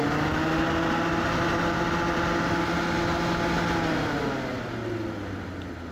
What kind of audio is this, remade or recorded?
recorded